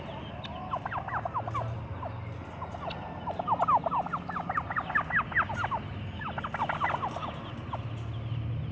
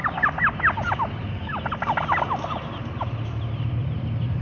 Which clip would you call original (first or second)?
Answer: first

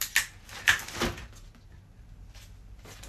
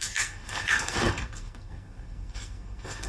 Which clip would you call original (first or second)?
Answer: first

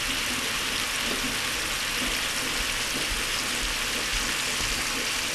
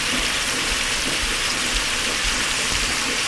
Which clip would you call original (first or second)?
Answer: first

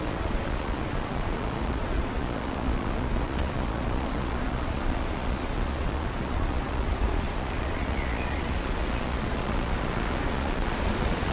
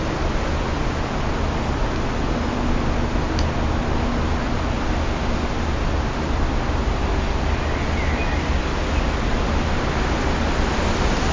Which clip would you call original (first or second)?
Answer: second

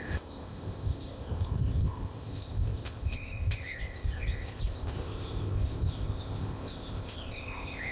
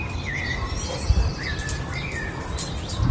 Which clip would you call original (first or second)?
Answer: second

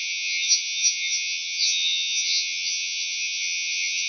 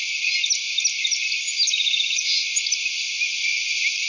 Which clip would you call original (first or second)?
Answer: second